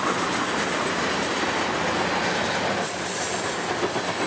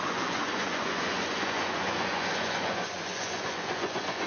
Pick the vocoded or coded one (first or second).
second